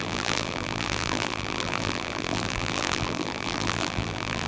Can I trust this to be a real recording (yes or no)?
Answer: no